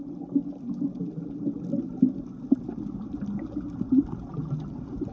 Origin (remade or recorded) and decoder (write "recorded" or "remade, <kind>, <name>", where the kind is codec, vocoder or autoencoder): recorded